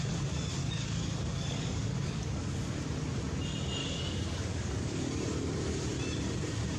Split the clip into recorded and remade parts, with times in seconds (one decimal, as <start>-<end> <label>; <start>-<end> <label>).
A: 0.0-0.6 recorded; 0.6-2.7 remade; 2.7-3.8 recorded; 3.8-5.0 remade; 5.0-6.8 recorded